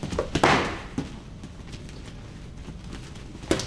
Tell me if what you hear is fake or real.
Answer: real